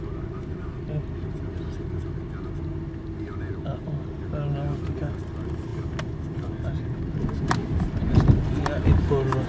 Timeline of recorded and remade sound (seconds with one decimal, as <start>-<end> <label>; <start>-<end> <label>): 0.0-9.5 recorded